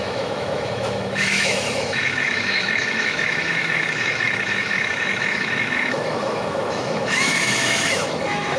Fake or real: fake